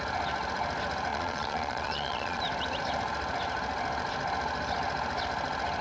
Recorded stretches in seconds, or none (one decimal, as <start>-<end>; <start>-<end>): 0.0-1.1; 2.4-5.8

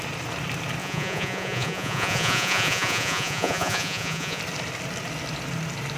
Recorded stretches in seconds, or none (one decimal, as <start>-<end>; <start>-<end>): 0.0-0.8; 4.4-6.0

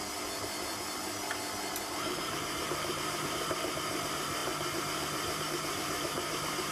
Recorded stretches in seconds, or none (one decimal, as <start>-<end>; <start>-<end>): 0.0-1.9

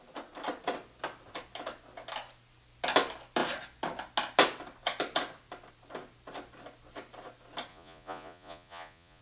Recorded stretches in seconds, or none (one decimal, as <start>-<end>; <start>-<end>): 0.0-7.7